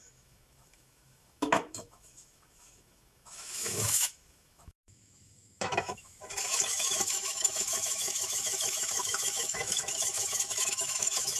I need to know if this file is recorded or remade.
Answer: remade